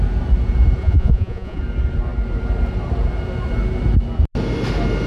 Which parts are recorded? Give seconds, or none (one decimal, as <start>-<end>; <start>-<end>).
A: 0.0-0.8; 1.6-5.1